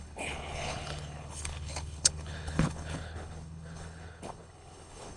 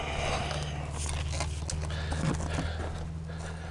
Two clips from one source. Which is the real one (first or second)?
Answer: second